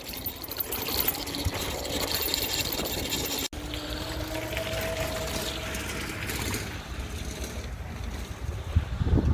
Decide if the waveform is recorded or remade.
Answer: recorded